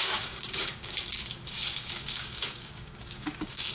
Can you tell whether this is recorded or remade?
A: remade